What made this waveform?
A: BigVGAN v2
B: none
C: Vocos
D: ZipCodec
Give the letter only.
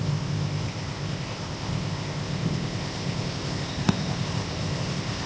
D